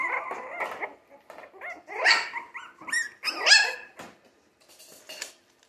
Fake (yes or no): no